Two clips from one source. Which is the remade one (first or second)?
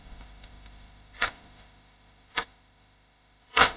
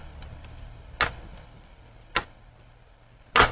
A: first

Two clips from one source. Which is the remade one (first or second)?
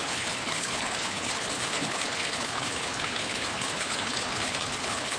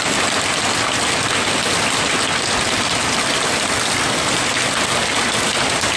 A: first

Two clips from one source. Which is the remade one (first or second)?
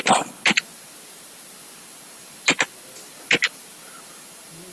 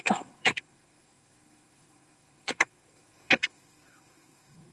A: second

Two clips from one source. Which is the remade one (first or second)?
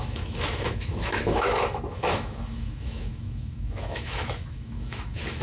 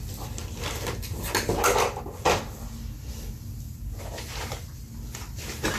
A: first